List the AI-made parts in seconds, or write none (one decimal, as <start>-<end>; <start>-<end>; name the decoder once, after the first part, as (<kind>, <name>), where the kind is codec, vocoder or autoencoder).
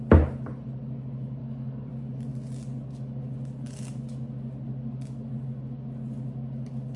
1.4-1.9 (codec, DAC)